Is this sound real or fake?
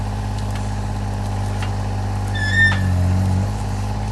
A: real